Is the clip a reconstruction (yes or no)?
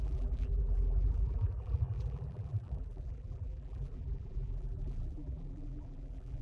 yes